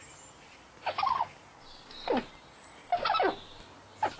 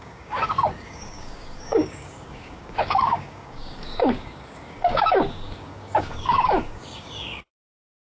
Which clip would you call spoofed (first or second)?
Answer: second